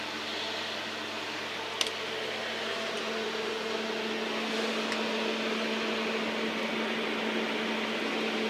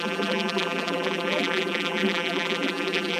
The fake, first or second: second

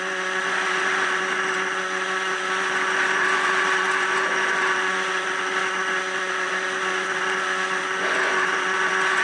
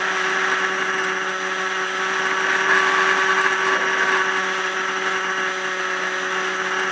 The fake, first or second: first